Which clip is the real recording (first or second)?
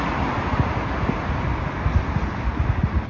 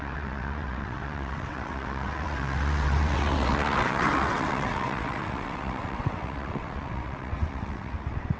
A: first